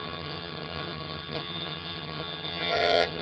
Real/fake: fake